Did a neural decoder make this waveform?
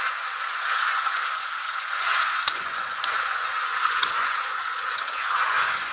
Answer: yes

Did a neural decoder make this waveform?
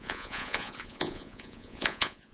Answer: yes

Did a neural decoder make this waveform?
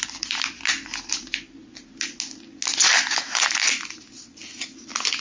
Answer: no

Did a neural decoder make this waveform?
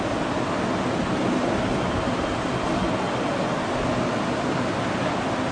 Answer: no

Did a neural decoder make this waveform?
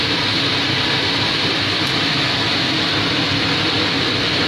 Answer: no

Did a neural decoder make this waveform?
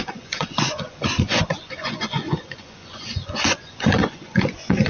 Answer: yes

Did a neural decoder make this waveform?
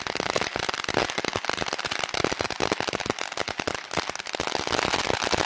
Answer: no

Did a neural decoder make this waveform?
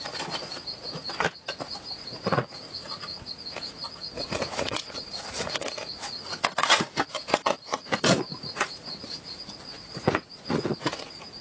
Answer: yes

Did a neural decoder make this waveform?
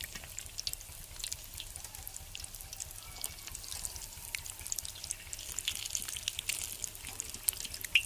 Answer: no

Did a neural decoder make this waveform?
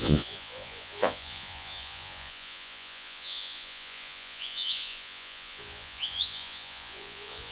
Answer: yes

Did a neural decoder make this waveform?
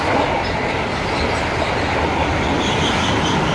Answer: no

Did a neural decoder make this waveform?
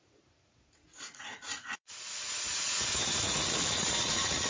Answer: yes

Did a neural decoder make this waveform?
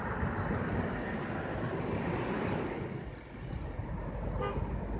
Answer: no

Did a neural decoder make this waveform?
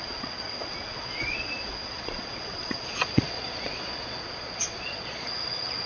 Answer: yes